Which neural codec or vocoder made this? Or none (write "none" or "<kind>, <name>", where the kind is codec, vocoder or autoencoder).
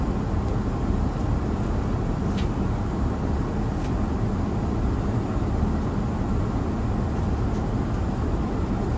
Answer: none